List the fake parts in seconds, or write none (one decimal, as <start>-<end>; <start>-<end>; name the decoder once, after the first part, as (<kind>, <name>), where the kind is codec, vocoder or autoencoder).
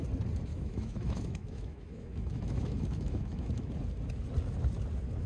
0.5-3.7 (autoencoder, DAC-VAE)